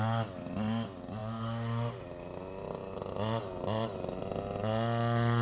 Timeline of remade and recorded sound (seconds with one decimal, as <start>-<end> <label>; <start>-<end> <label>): 0.0-5.4 recorded